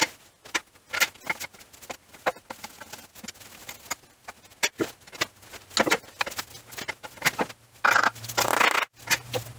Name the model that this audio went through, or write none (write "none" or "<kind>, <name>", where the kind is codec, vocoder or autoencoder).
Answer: none